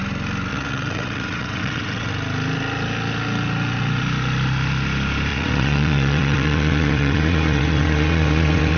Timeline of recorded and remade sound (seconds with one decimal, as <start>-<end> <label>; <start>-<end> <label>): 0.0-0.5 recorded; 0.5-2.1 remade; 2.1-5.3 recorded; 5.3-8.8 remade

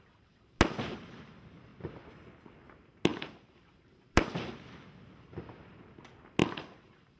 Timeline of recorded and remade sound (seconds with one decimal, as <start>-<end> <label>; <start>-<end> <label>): 0.0-3.1 recorded; 3.1-4.7 remade; 4.7-7.2 recorded

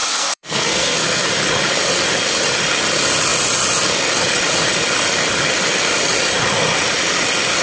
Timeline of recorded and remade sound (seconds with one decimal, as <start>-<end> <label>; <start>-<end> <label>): 0.0-1.3 remade; 1.3-7.6 recorded